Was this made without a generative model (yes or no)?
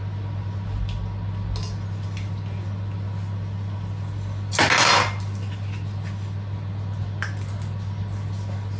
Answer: yes